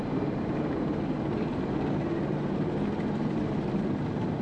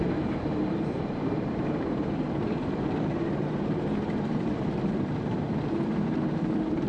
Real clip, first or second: first